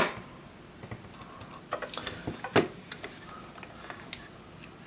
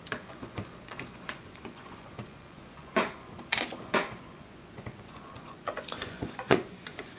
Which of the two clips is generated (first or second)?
second